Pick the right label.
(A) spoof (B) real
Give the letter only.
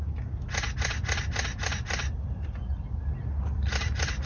B